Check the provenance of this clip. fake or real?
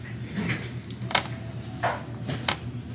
real